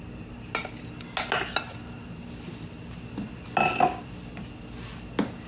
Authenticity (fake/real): real